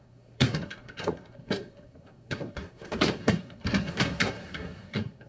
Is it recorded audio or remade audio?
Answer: remade